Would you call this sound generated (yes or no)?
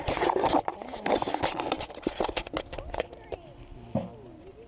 no